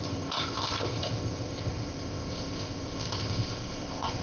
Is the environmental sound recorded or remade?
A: remade